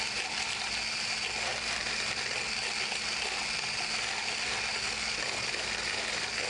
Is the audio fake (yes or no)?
no